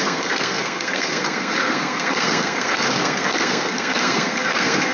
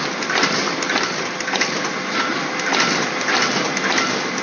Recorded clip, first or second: second